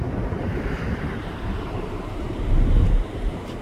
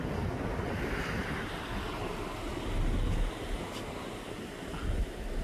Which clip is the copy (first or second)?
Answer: first